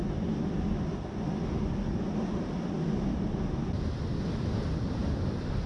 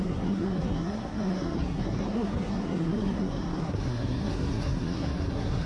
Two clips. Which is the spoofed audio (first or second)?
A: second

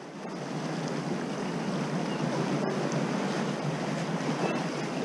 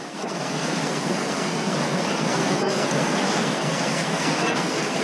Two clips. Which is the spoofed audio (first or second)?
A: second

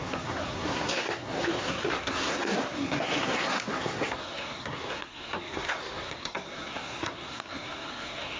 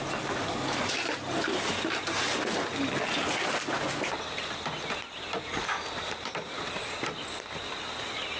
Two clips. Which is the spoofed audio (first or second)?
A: first